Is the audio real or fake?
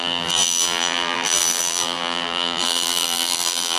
fake